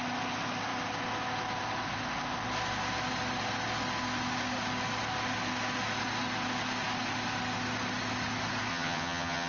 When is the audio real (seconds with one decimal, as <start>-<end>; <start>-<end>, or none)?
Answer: 0.0-8.7